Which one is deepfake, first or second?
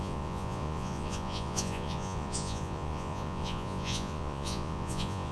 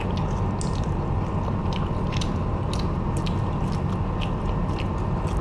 first